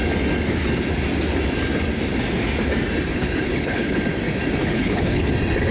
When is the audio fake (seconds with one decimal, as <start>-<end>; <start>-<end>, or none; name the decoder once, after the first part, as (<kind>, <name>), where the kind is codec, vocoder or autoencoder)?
3.1-4.0 (codec, HILCodec); 4.6-5.3